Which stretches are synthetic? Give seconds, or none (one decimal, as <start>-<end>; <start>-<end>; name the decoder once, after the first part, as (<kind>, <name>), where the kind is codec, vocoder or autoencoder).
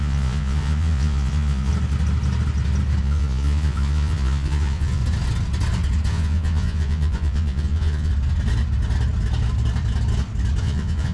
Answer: 0.0-1.7 (vocoder, Vocos); 3.0-5.0; 6.1-8.1; 10.6-11.1